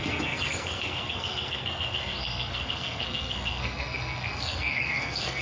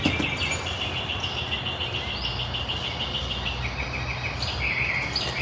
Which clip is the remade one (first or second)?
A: first